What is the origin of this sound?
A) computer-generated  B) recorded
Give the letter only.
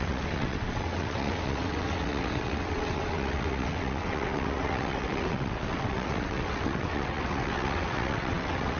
A